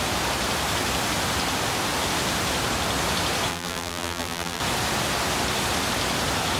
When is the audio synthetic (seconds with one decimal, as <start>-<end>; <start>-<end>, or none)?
3.5-4.6

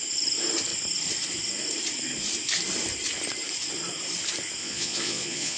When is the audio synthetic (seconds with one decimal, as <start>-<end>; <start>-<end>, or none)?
4.6-5.6

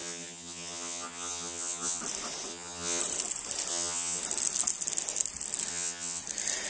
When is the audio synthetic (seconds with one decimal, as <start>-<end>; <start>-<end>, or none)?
0.0-2.0; 2.5-3.0; 3.7-4.2; 5.7-6.2

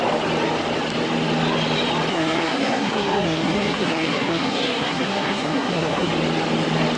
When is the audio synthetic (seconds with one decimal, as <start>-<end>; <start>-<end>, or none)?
2.1-6.1